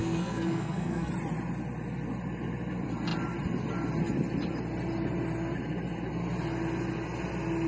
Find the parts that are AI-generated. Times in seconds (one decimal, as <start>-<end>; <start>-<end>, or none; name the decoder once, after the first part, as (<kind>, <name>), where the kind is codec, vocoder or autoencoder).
0.0-1.1 (codec, SNAC)